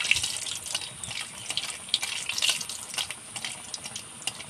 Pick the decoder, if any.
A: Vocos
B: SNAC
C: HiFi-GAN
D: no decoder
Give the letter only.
D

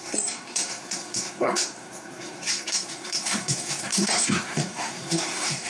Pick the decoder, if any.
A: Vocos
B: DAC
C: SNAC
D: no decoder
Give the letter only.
C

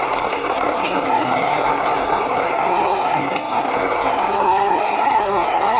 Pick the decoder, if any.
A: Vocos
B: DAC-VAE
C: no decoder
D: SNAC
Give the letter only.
D